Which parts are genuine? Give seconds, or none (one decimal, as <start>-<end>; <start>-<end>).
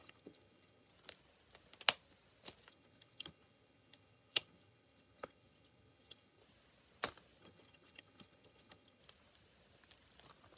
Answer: 0.9-2.7; 6.4-7.4; 9.0-10.6